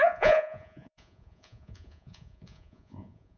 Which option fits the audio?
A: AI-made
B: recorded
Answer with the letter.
A